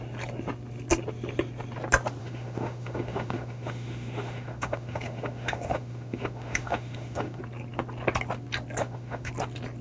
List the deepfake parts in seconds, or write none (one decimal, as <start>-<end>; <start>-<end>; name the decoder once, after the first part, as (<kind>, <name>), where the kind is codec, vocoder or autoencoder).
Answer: 2.2-7.4 (autoencoder, DAC-VAE); 8.8-9.3